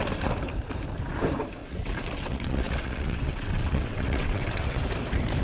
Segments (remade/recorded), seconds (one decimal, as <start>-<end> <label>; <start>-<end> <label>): 0.0-1.6 recorded; 1.6-4.8 remade; 4.8-5.4 recorded